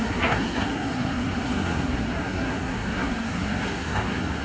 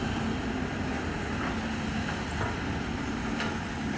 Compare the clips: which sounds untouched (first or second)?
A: second